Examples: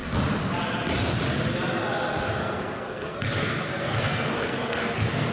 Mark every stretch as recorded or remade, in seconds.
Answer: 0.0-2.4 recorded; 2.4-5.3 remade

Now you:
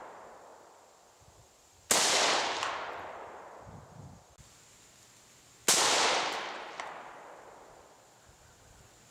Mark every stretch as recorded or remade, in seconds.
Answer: 0.0-9.1 recorded

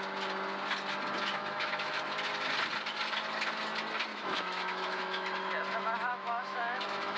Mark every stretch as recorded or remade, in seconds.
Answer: 0.0-1.4 recorded; 1.4-2.0 remade; 2.0-4.1 recorded; 4.1-5.5 remade; 5.5-6.1 recorded; 6.1-7.2 remade

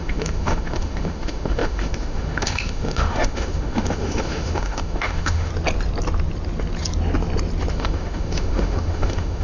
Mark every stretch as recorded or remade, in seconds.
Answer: 0.0-5.5 remade; 5.5-7.7 recorded; 7.7-9.4 remade

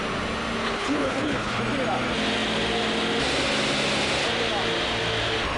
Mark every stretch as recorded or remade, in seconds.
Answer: 0.0-0.6 recorded; 0.6-1.6 remade; 1.6-5.6 recorded

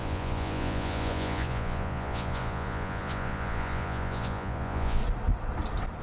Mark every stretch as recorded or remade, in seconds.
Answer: 0.0-5.0 remade; 5.0-6.0 recorded